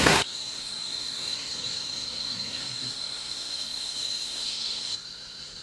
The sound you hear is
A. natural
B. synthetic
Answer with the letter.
B